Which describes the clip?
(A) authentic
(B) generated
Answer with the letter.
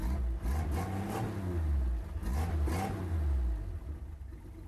A